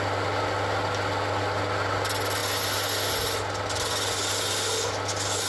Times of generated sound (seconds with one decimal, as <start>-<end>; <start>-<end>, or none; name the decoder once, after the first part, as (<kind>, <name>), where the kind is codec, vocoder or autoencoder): none